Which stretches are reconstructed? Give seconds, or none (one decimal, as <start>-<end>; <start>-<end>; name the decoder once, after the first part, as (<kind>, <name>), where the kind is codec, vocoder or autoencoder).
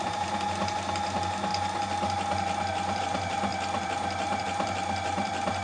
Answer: none